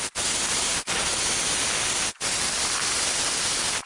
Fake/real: real